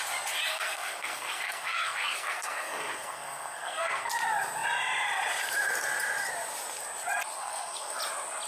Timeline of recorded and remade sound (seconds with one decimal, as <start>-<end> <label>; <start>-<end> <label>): 0.0-0.5 recorded; 0.5-4.1 remade; 4.1-7.4 recorded; 7.4-8.0 remade; 8.0-8.5 recorded